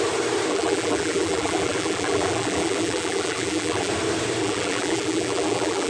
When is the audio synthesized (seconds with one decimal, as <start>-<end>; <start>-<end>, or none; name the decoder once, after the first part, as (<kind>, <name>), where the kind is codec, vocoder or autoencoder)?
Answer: 0.5-3.9 (vocoder, BigVGAN v2); 4.4-5.9